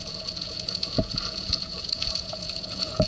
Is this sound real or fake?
fake